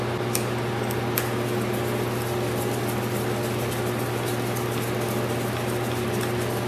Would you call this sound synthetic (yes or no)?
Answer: no